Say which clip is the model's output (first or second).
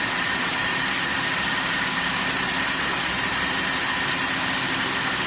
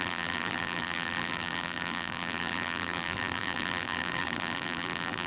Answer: second